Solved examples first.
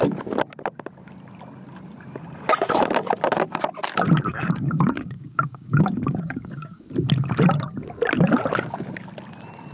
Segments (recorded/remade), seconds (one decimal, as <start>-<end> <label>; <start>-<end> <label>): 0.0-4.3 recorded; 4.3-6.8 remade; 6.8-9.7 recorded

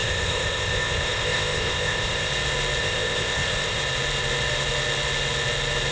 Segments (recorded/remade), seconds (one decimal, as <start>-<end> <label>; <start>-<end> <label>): 0.0-2.3 remade; 2.3-2.8 recorded; 2.8-3.8 remade; 3.8-5.9 recorded

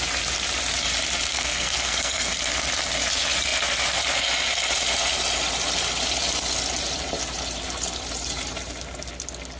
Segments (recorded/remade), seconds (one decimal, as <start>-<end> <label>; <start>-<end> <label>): 0.0-1.3 recorded; 1.3-2.3 remade; 2.3-9.6 recorded

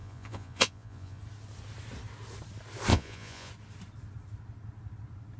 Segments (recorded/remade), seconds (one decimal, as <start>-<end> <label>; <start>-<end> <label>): 0.0-1.2 remade; 1.2-2.9 recorded; 2.9-3.5 remade; 3.5-5.4 recorded